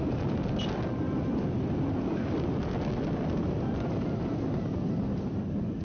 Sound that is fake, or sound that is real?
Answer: real